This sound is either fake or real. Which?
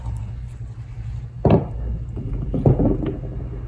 real